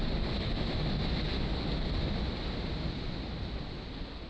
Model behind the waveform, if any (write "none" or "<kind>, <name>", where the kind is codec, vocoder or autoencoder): none